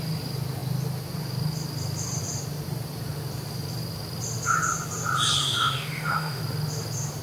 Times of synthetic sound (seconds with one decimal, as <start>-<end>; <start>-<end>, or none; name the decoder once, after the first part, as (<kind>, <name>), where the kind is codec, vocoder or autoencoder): 5.4-6.4 (autoencoder, DAC-VAE)